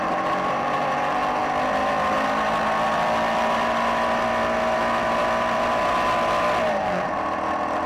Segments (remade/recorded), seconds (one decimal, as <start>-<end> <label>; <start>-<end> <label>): 0.0-7.9 recorded